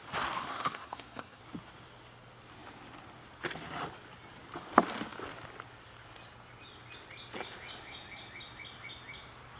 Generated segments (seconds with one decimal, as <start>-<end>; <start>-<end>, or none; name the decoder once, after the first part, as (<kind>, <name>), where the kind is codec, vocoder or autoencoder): 0.4-1.4 (codec, SNAC)